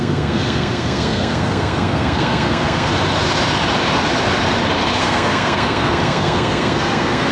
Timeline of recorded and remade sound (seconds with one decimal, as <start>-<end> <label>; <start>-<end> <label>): 0.0-2.9 remade; 2.9-5.0 recorded; 5.0-7.3 remade